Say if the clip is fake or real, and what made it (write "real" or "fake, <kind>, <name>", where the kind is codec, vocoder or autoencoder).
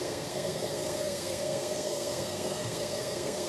fake, codec, SNAC